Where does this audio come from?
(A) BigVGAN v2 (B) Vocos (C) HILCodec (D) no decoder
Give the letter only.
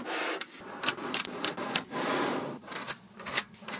D